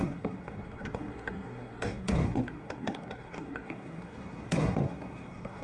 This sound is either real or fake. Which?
fake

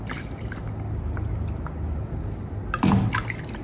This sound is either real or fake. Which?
real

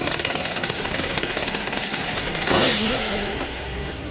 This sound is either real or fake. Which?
fake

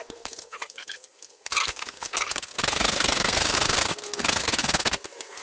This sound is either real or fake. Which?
fake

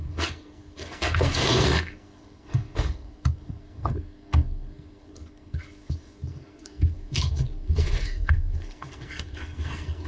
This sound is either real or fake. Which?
fake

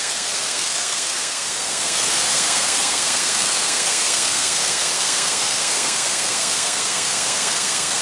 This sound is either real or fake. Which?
fake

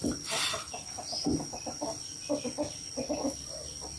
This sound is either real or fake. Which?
real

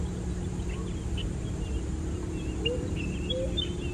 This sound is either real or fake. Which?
real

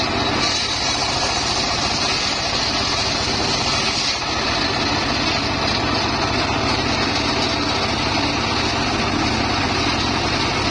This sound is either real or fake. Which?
real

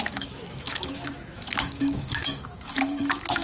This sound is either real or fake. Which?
fake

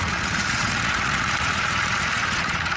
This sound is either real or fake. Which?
fake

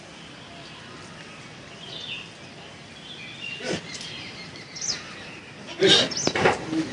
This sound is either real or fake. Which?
real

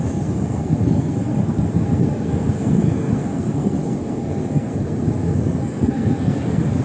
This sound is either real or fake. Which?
fake